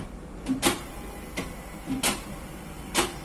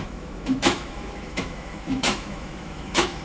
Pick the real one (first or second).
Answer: first